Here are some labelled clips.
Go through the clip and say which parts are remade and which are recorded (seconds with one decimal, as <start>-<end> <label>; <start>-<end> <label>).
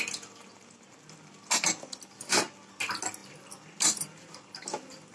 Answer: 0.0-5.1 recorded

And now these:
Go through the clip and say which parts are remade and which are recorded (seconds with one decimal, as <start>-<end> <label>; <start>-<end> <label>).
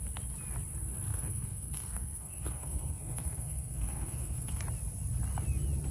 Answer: 0.0-1.1 recorded; 1.1-4.6 remade; 4.6-5.9 recorded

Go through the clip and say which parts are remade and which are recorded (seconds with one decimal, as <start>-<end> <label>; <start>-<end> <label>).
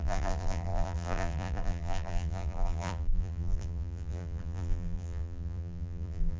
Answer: 0.0-6.4 remade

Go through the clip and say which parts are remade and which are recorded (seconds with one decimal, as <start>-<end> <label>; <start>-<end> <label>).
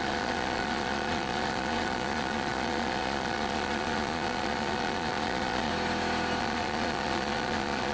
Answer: 0.0-5.7 remade; 5.7-6.4 recorded; 6.4-7.9 remade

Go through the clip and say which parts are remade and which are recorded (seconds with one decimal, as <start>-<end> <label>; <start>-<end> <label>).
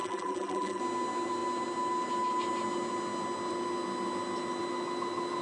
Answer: 0.0-0.8 remade; 0.8-5.4 recorded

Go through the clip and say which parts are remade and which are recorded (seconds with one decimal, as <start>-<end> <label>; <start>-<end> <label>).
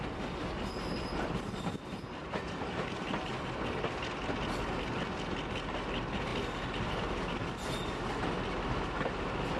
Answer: 0.0-9.6 recorded